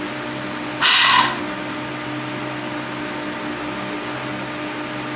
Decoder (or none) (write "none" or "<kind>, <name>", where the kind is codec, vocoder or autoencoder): none